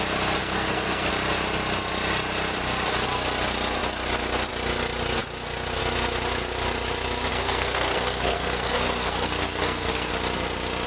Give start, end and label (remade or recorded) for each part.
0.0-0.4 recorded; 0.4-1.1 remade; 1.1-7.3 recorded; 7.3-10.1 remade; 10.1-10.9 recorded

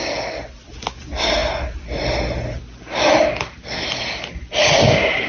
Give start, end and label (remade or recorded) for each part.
0.0-5.3 recorded

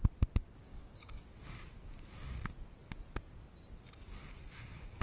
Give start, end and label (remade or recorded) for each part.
0.0-0.6 recorded; 0.6-1.2 remade; 1.2-5.0 recorded